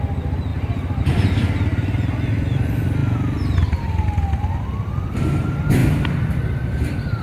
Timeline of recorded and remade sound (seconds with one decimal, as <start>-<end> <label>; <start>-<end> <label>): 0.0-0.5 recorded; 0.5-1.0 remade; 1.0-3.0 recorded; 3.0-4.6 remade; 4.6-5.8 recorded; 5.8-7.2 remade